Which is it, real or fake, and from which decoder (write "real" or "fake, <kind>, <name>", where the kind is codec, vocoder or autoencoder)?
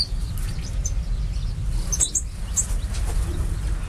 real